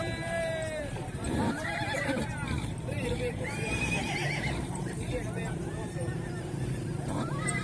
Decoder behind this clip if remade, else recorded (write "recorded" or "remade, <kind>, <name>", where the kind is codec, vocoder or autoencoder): remade, vocoder, BigVGAN v2